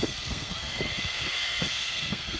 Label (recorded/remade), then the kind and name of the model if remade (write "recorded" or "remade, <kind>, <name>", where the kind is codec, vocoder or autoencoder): remade, codec, SNAC